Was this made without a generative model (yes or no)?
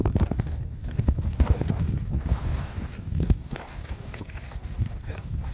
no